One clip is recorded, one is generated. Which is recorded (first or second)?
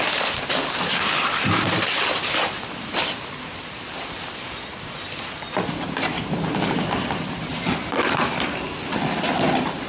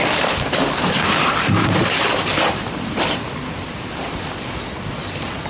first